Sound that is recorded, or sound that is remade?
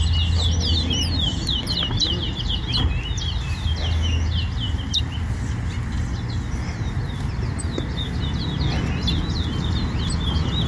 recorded